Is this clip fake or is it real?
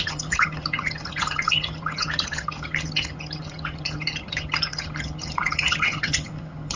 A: fake